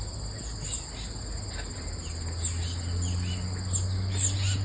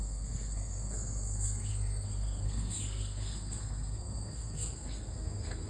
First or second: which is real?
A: first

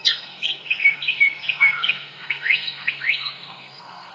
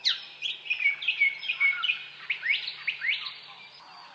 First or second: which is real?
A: second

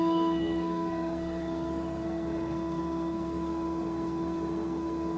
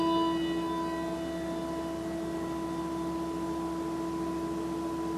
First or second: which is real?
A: second